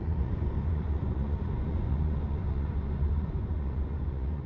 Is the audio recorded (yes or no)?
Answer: no